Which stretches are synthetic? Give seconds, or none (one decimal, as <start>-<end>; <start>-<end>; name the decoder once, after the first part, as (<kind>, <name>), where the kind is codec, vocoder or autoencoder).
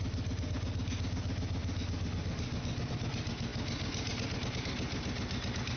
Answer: none